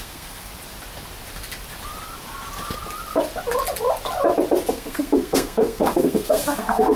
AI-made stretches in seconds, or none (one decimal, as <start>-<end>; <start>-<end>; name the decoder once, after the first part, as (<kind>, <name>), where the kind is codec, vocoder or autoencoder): 0.0-0.5 (codec, SNAC); 4.7-7.0